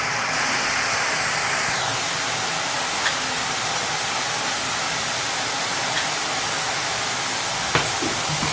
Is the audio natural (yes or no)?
yes